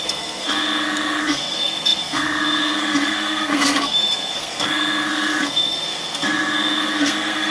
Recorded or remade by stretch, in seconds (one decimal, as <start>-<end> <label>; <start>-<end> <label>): 0.0-7.5 remade

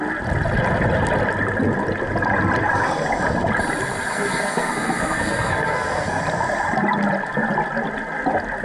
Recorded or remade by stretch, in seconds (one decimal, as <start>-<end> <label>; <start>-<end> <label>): 0.0-4.1 recorded; 4.1-6.2 remade; 6.2-8.6 recorded

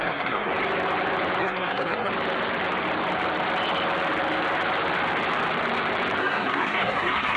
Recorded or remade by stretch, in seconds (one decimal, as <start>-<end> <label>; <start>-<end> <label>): 0.0-0.5 remade; 0.5-1.4 recorded; 1.4-2.1 remade; 2.1-6.2 recorded; 6.2-7.4 remade

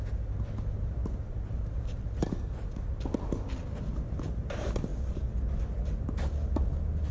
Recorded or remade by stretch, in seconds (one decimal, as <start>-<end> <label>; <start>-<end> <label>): 0.0-7.1 recorded

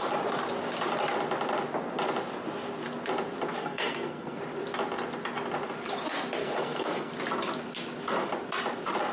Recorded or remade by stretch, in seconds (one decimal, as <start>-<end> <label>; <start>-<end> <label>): 0.0-3.6 recorded; 3.6-4.4 remade; 4.4-6.4 recorded; 6.4-7.1 remade; 7.1-9.1 recorded

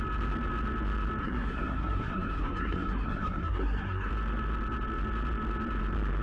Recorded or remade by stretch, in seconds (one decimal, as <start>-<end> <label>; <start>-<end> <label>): 0.0-1.2 recorded; 1.2-4.1 remade; 4.1-6.2 recorded